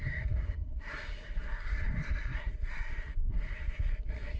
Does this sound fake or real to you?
fake